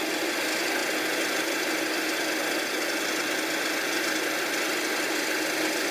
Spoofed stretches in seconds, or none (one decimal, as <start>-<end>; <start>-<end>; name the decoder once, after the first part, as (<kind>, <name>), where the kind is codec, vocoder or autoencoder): none